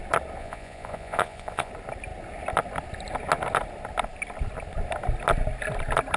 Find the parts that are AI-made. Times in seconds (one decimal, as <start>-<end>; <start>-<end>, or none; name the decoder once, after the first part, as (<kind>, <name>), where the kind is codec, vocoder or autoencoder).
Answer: 0.4-1.7 (vocoder, Vocos)